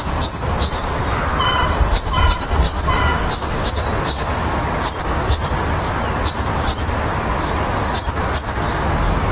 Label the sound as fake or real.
real